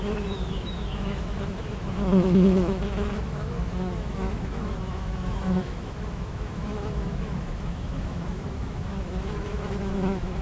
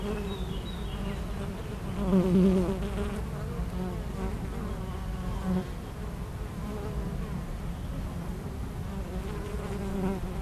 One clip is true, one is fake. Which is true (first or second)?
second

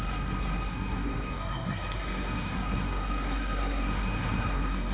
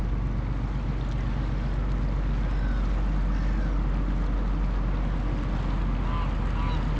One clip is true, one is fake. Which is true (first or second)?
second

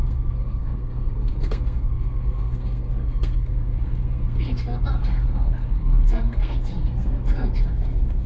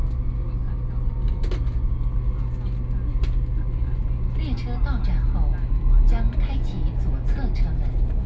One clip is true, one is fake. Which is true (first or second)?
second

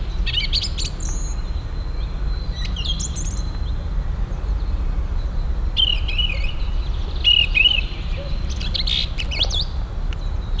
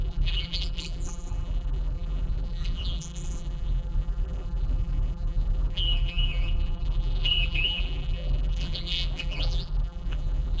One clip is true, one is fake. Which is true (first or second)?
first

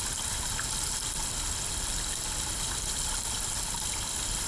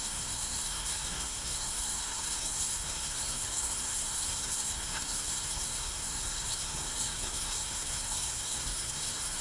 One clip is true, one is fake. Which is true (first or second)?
first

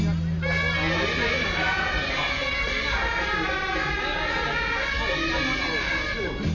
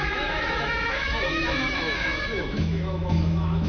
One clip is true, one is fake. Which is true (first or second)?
first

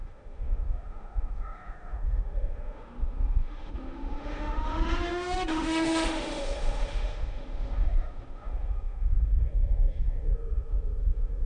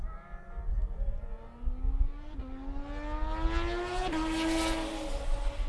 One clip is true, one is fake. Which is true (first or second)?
second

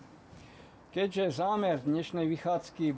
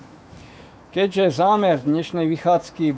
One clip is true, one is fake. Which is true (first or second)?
first